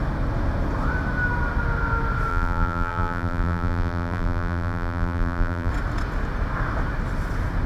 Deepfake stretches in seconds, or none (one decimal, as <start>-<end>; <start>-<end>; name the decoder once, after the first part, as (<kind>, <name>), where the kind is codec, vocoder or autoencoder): 2.3-5.7 (vocoder, BigVGAN v2)